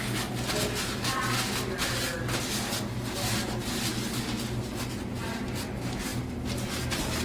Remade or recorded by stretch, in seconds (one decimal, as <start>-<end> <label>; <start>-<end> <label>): 0.0-7.2 recorded